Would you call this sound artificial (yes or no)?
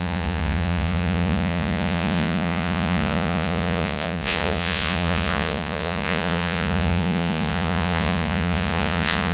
yes